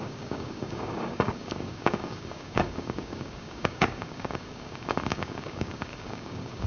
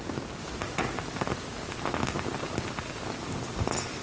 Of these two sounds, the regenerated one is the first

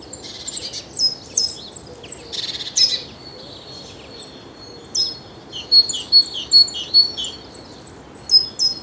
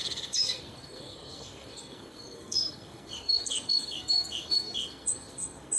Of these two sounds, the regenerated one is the second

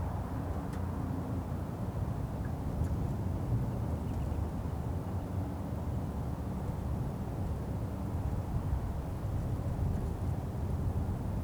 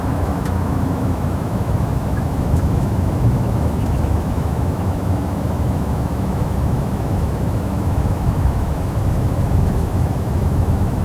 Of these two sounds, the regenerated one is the second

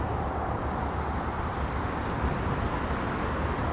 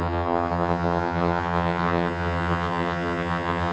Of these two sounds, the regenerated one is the second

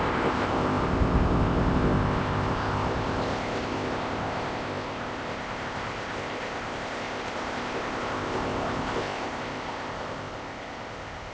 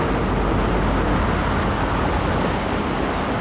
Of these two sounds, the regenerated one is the first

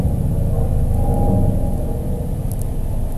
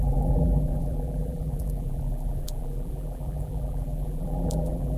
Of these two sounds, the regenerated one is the second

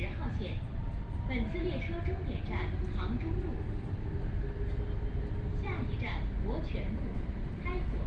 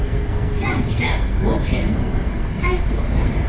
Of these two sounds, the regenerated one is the second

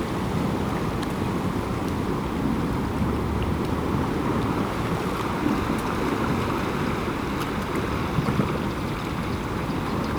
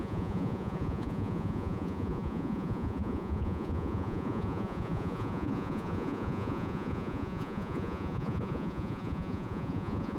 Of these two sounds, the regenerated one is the second